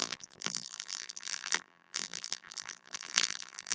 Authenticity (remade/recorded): remade